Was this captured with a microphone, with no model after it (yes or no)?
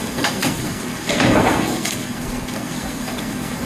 no